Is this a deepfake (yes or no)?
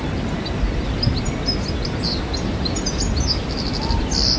no